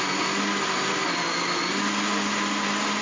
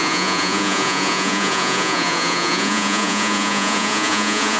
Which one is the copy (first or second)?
second